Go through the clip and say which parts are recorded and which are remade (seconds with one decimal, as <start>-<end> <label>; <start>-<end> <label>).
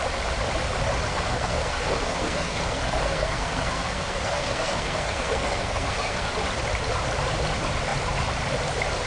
0.0-1.1 recorded; 1.1-6.3 remade; 6.3-9.1 recorded